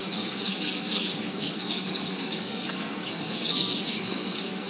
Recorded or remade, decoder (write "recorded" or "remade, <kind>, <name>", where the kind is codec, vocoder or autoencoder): remade, codec, SNAC